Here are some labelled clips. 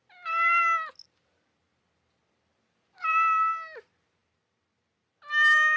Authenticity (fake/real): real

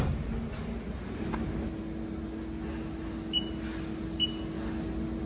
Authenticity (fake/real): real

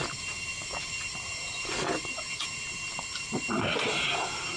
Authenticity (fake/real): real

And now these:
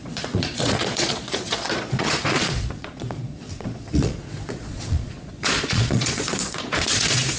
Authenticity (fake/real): fake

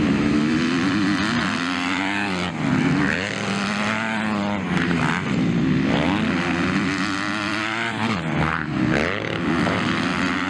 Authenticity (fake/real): real